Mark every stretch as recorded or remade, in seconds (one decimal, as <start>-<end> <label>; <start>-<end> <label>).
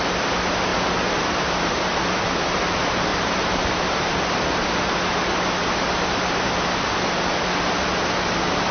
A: 0.0-0.7 recorded; 0.7-2.6 remade; 2.6-3.1 recorded; 3.1-4.2 remade; 4.2-8.7 recorded